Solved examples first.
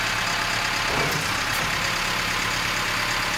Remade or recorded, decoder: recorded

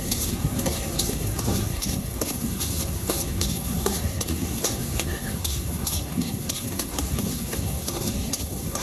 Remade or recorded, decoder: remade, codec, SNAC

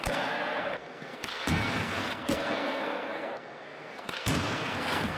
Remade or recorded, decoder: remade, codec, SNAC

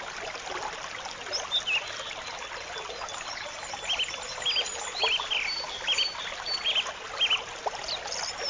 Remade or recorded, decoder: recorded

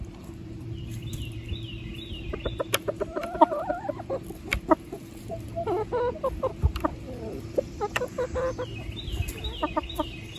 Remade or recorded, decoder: remade, vocoder, BigVGAN v2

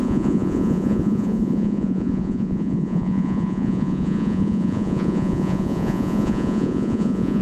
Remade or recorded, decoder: remade, vocoder, Vocos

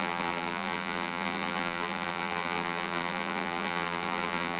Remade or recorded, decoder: remade, vocoder, BigVGAN v2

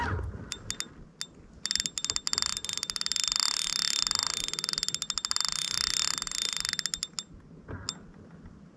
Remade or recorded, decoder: recorded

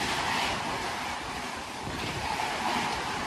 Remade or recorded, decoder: remade, vocoder, BigVGAN v2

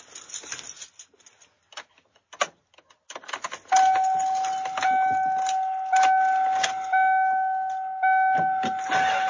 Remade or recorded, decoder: recorded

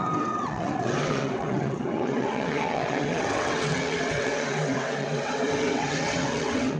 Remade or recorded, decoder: remade, vocoder, WaveNeXt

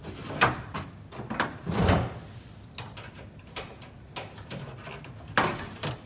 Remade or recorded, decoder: recorded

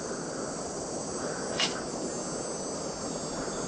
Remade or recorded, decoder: recorded